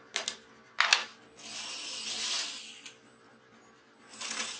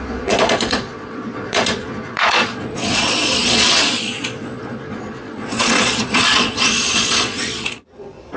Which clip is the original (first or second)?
first